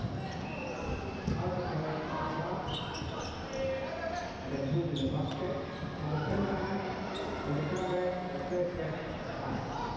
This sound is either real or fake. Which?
real